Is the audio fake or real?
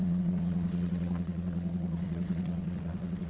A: fake